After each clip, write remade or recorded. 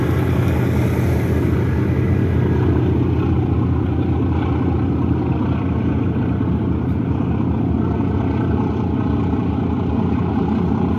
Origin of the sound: recorded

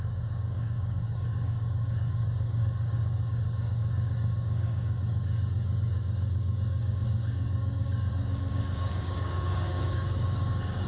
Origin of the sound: remade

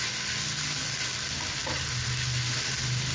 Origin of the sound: recorded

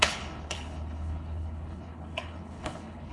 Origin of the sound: remade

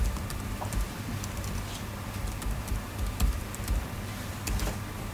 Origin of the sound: remade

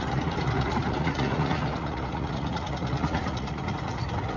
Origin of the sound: remade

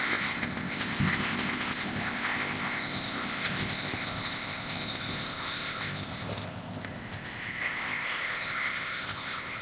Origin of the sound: remade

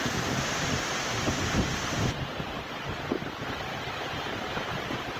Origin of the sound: remade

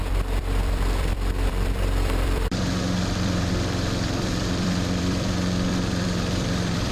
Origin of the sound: remade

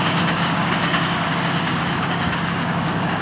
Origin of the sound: remade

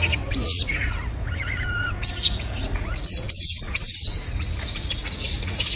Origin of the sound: remade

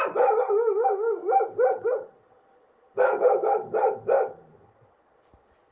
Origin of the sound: recorded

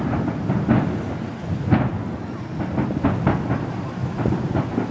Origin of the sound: recorded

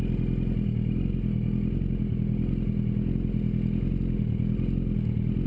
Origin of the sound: recorded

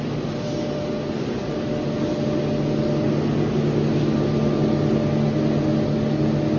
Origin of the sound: recorded